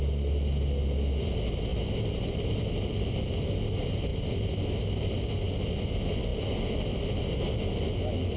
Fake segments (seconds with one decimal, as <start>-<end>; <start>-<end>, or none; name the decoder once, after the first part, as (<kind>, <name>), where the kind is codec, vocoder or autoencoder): 1.7-3.4 (vocoder, BigVGAN v2); 6.3-7.2